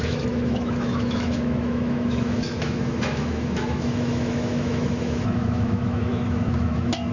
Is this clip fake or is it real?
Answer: fake